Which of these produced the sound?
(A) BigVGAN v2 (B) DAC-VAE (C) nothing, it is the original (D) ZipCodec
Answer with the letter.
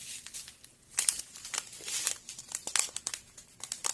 C